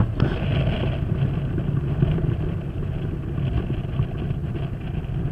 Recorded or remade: recorded